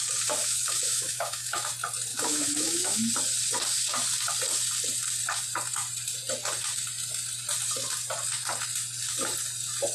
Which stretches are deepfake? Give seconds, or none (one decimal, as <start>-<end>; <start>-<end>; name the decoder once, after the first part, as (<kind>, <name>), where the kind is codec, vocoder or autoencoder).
0.4-1.7 (autoencoder, DAC-VAE); 2.1-3.1

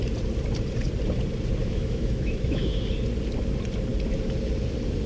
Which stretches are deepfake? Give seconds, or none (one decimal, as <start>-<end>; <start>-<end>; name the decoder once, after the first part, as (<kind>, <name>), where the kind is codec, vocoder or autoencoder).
1.6-2.8 (autoencoder, DAC-VAE)

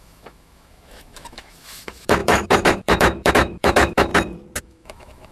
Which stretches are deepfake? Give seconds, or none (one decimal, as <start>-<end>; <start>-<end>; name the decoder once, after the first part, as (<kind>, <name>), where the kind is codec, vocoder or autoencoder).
0.0-4.1 (autoencoder, DAC-VAE); 4.6-5.3

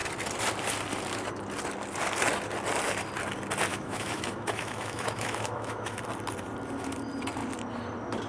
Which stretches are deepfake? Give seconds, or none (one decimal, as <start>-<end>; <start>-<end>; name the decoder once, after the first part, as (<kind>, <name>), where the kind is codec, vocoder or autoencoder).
3.7-6.0 (autoencoder, DAC-VAE)

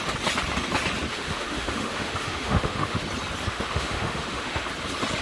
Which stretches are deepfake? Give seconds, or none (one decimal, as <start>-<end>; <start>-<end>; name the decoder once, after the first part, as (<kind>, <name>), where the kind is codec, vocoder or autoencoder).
1.1-3.0 (autoencoder, DAC-VAE); 3.5-4.7